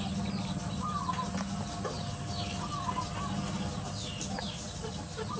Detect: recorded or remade recorded